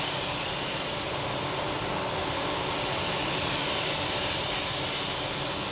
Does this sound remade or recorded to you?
recorded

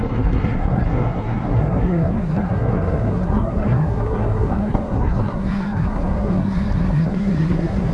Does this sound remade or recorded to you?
remade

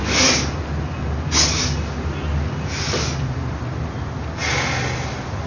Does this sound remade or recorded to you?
recorded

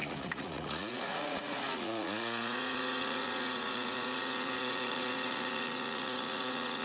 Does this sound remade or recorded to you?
remade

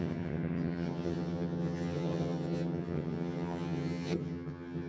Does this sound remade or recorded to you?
remade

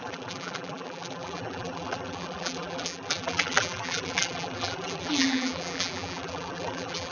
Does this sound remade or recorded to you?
remade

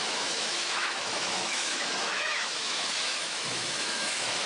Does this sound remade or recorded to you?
remade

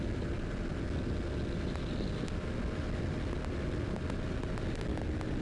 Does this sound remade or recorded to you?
recorded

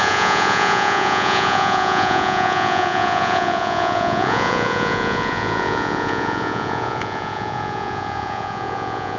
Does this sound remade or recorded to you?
remade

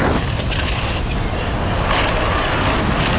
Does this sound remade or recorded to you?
recorded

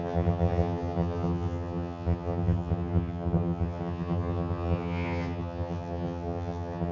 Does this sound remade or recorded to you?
remade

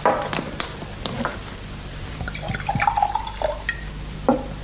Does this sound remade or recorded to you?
recorded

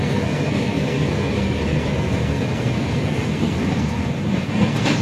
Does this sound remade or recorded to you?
remade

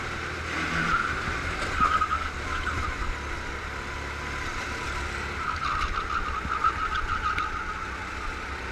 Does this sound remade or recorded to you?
recorded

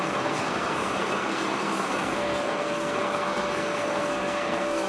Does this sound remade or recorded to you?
remade